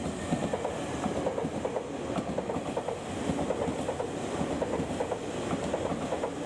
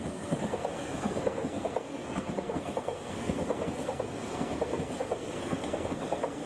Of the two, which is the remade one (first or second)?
second